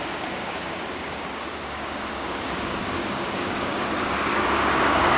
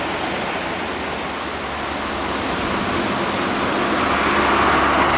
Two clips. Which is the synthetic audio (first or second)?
first